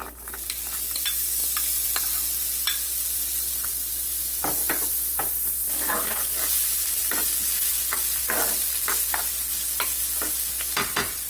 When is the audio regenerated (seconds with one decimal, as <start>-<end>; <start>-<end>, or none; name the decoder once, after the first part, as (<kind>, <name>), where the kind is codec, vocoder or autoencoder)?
none